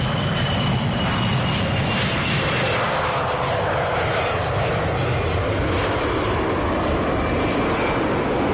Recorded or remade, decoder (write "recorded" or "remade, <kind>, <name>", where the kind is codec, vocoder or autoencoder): recorded